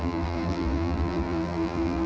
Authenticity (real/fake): fake